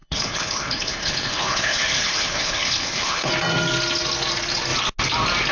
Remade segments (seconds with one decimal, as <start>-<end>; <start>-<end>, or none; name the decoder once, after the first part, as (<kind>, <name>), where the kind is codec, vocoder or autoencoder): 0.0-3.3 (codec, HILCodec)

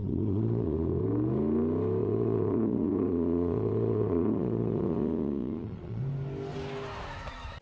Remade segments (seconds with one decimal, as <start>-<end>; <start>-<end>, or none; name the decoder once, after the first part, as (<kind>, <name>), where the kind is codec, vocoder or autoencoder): 0.0-1.0 (vocoder, Vocos); 2.0-6.0

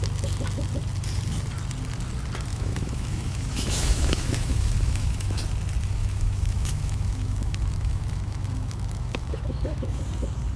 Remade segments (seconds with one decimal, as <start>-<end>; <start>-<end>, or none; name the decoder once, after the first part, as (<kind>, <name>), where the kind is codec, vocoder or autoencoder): 2.5-5.4 (autoencoder, DAC-VAE); 6.0-10.0

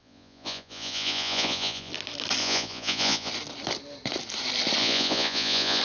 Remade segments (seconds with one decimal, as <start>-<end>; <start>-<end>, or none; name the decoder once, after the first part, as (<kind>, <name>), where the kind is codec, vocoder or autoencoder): 0.0-1.9 (vocoder, Vocos); 2.4-3.3; 4.8-5.8

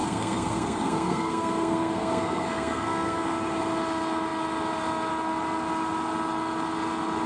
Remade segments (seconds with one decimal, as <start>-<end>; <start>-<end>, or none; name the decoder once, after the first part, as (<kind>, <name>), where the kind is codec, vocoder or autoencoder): 0.0-3.2 (codec, SNAC)

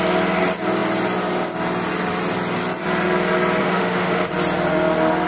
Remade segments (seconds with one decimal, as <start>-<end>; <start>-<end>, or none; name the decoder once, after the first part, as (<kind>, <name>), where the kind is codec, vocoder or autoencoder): 3.6-4.3 (autoencoder, DAC-VAE)